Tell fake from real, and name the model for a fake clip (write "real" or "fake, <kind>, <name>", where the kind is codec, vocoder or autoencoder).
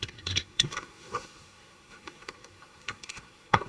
fake, codec, SNAC